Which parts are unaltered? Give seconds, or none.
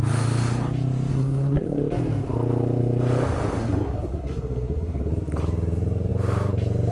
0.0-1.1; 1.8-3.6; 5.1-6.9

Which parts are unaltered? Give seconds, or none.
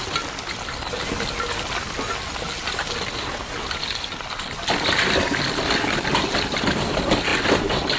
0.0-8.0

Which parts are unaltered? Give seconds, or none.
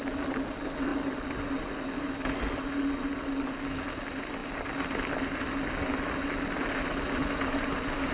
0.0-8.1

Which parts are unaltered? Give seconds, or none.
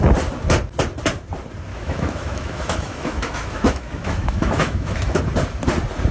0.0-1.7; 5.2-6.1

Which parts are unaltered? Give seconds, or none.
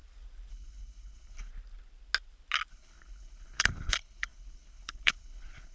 0.0-0.5; 1.5-2.7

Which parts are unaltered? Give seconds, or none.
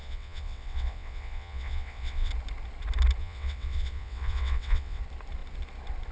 2.3-3.2; 5.0-6.1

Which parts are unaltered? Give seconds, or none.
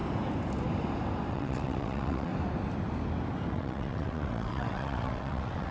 0.0-1.3; 2.3-3.5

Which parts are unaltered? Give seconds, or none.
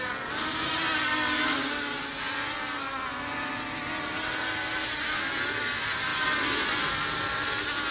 0.0-7.9